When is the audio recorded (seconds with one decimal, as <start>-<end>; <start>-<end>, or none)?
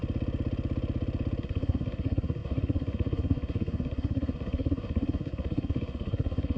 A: 0.0-1.4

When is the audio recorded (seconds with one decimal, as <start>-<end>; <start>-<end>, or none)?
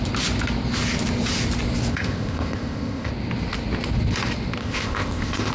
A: 0.0-1.9; 3.1-4.6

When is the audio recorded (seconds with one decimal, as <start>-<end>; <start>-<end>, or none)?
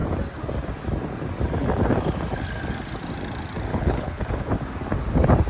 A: 0.0-3.7; 4.2-5.5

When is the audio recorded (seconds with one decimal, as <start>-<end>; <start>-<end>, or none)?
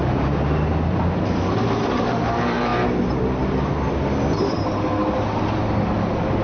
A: 0.0-0.9; 2.7-5.8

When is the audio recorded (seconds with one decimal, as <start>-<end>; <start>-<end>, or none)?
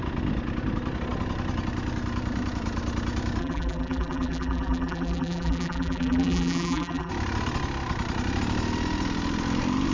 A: 0.0-3.4; 7.1-9.9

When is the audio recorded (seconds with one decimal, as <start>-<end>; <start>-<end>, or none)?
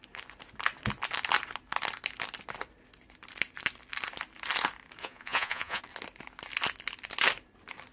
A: 0.0-5.0; 5.8-7.9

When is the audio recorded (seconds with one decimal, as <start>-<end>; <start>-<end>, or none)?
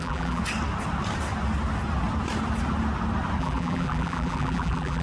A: 0.4-3.4